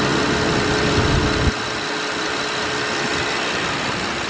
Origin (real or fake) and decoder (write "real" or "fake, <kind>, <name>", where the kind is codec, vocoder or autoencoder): real